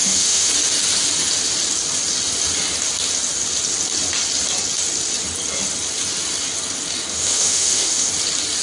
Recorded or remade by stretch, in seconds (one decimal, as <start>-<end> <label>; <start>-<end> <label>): 0.0-0.5 remade; 0.5-7.1 recorded; 7.1-8.1 remade; 8.1-8.6 recorded